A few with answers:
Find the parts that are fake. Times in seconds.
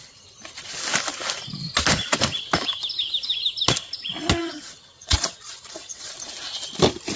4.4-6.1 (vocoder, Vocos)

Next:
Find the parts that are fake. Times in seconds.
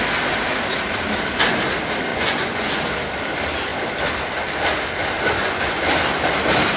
2.1-2.8 (vocoder, Vocos); 5.4-6.0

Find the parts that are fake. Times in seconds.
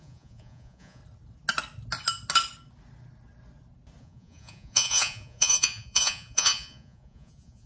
0.0-1.0 (vocoder, Vocos); 4.0-7.7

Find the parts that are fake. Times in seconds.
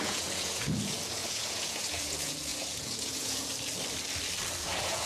0.0-3.5 (vocoder, Vocos); 4.6-5.1